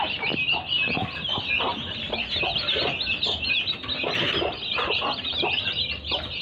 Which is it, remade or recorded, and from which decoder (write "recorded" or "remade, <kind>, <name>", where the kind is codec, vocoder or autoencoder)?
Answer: recorded